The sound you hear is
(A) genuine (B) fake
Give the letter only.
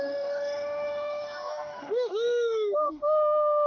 B